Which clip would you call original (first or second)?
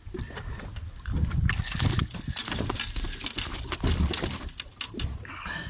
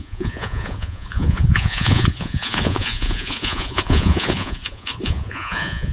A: first